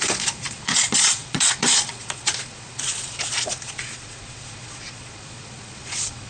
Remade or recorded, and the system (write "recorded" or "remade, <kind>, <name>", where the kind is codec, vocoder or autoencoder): remade, vocoder, Vocos